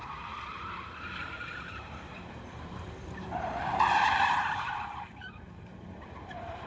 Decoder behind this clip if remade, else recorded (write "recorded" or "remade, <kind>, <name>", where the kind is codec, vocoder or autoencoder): remade, vocoder, BigVGAN v2